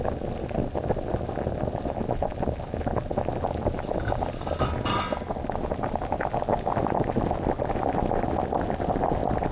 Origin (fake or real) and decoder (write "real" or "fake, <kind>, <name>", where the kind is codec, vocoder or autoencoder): real